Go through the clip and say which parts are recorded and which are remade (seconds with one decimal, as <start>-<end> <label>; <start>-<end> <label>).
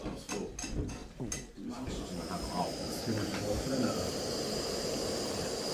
0.0-1.0 recorded; 1.0-4.4 remade; 4.4-5.0 recorded; 5.0-5.7 remade